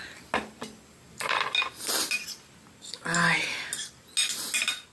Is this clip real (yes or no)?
yes